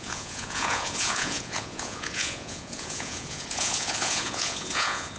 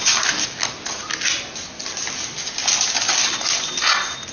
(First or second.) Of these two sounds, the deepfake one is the first